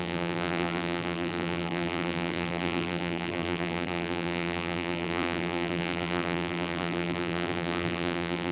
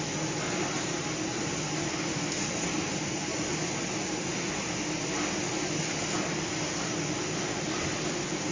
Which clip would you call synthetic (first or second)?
first